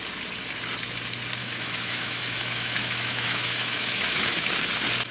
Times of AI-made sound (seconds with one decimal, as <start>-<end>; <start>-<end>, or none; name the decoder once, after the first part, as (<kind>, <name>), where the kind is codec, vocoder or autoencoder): 1.4-4.5 (autoencoder, DAC-VAE)